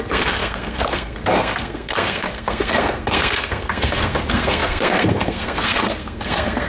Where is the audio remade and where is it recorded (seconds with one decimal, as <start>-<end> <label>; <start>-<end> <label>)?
0.0-6.7 remade